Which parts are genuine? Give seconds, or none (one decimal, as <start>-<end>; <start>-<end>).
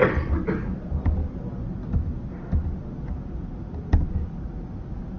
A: 0.0-5.2